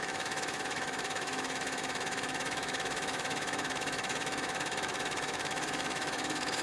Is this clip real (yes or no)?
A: no